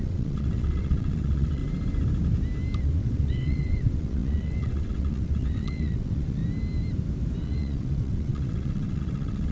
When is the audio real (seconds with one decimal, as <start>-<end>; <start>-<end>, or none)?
1.6-2.8; 6.4-7.4